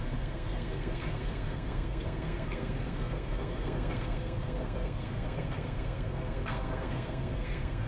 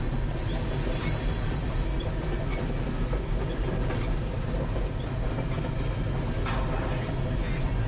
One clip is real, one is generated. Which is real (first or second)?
second